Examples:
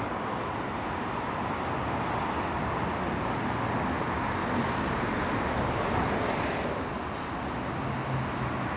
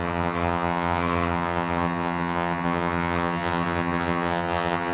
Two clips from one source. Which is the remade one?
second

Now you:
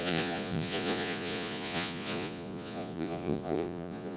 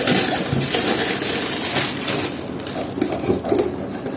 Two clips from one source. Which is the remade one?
first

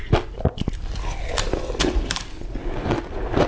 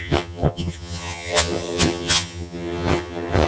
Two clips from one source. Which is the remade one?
second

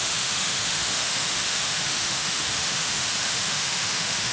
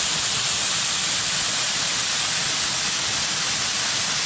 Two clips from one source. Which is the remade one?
first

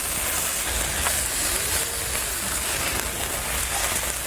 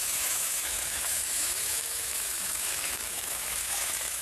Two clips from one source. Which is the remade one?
second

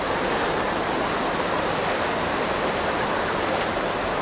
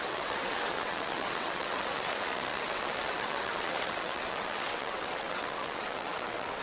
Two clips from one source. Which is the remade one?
second